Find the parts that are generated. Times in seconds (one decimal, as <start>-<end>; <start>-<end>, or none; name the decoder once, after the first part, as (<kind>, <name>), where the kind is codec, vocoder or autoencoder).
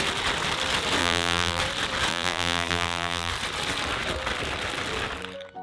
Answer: 1.0-1.6 (vocoder, BigVGAN v2); 2.1-3.3